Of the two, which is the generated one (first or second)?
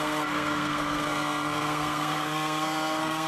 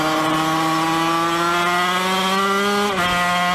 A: first